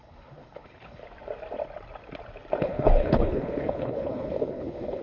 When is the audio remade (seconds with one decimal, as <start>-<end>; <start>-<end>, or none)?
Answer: 0.0-1.0; 2.6-5.0